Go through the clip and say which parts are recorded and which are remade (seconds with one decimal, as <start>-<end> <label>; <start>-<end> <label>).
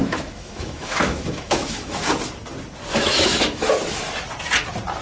0.0-2.0 remade; 2.0-2.9 recorded; 2.9-3.7 remade; 3.7-5.0 recorded